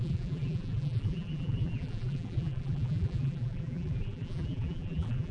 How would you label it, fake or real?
fake